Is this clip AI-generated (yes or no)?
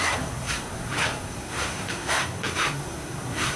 yes